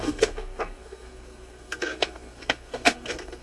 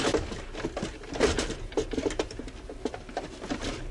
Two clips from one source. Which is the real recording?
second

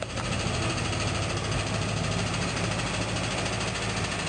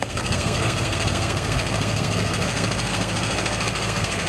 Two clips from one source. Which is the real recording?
first